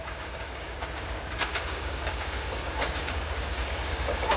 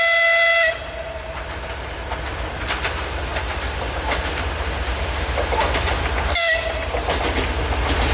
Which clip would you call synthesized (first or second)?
first